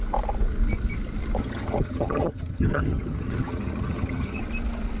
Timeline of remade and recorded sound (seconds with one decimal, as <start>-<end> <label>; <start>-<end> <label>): 0.0-1.4 recorded; 1.4-4.4 remade; 4.4-5.0 recorded